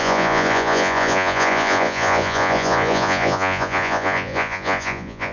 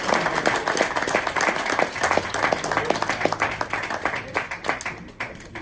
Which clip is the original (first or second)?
second